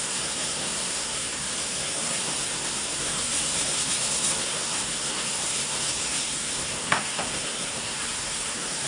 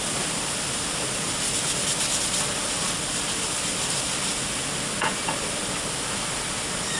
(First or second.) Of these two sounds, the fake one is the first